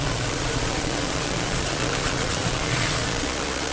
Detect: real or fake fake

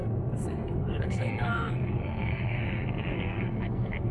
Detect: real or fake fake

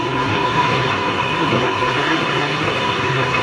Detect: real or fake fake